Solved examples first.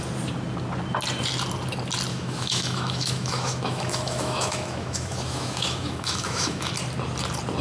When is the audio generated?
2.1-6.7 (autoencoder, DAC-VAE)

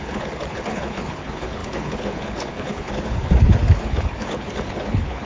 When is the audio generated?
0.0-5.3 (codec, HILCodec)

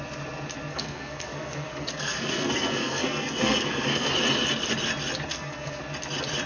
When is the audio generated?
0.7-4.1 (codec, SNAC); 5.3-5.8